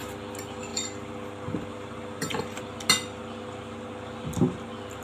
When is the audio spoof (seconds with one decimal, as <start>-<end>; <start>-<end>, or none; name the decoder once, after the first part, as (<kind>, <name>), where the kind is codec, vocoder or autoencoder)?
0.7-2.6 (vocoder, BigVGAN v2)